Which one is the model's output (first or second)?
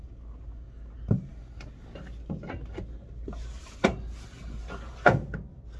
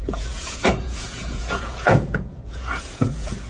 second